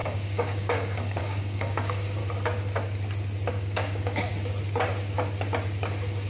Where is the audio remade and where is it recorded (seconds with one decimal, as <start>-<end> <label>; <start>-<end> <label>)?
0.0-2.2 remade; 2.2-3.5 recorded; 3.5-4.3 remade; 4.3-6.3 recorded

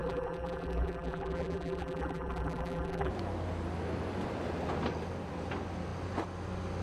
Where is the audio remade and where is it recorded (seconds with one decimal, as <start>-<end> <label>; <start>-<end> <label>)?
0.0-3.1 remade; 3.1-6.8 recorded